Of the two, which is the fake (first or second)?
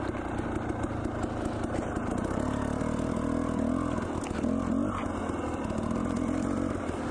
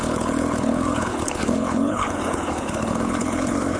second